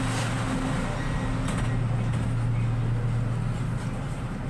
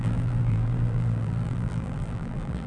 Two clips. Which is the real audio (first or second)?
first